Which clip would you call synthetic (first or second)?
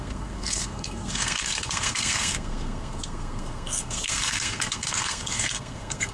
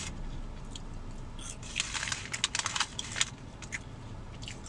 first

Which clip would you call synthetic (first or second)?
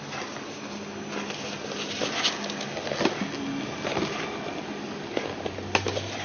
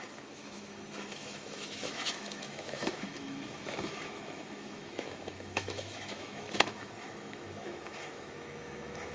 second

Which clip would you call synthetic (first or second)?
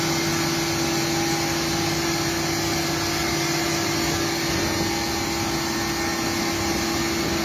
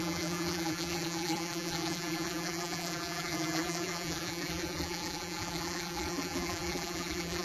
second